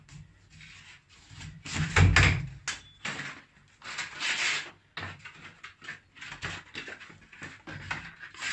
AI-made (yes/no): no